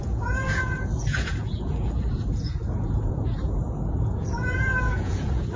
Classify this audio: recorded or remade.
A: remade